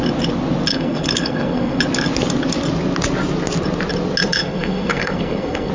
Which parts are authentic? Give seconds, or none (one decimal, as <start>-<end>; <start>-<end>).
0.0-0.7; 1.8-4.4